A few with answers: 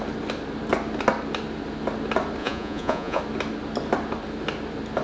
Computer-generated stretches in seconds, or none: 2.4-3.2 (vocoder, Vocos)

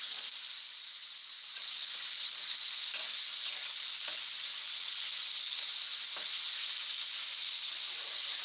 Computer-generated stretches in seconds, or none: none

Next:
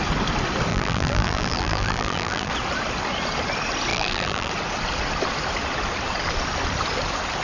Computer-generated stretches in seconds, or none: 0.7-2.5 (vocoder, BigVGAN v2); 3.9-4.5